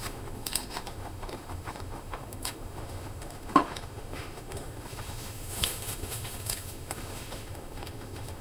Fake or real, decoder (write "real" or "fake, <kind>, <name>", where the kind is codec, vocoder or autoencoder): fake, autoencoder, DAC-VAE